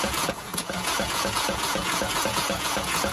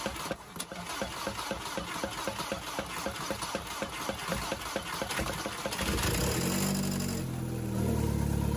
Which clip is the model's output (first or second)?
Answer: first